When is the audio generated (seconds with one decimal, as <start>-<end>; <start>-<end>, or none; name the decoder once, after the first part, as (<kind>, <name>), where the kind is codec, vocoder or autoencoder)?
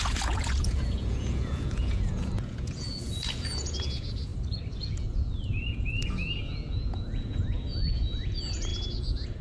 0.0-4.3 (vocoder, Vocos); 4.9-9.4